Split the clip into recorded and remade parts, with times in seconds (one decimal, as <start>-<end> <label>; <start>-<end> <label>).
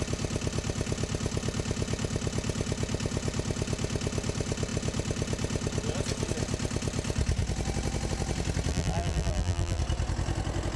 0.0-8.7 recorded; 8.7-9.8 remade; 9.8-10.8 recorded